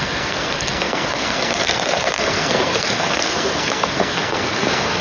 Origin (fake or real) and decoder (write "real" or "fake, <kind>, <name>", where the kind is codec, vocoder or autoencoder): fake, codec, SNAC